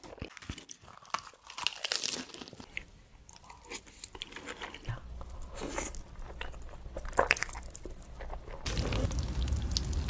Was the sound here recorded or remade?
recorded